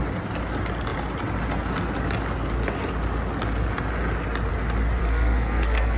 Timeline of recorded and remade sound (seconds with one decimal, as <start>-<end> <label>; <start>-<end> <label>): 0.0-5.0 recorded; 5.0-6.0 remade